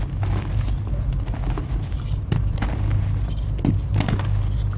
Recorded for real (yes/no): yes